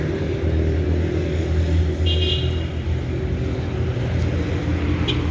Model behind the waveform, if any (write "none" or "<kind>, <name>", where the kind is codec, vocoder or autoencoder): none